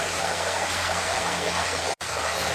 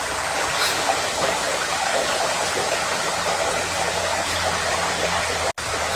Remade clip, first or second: first